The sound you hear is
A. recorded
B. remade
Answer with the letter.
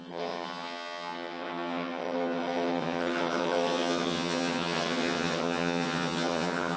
B